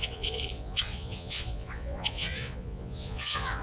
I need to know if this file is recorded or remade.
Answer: remade